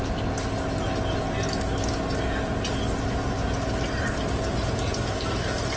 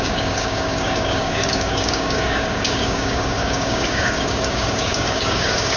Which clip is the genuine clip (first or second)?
first